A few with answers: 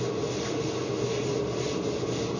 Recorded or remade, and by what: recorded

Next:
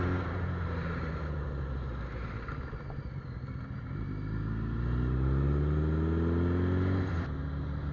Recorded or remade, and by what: recorded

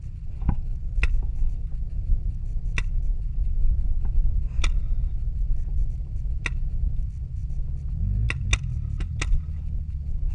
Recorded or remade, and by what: recorded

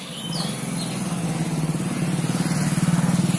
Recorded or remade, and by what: recorded